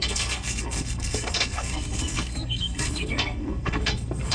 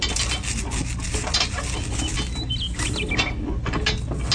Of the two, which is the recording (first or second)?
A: second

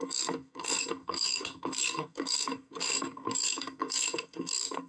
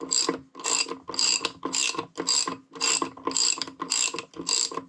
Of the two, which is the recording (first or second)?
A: second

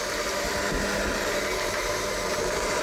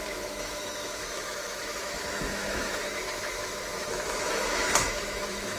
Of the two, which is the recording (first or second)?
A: first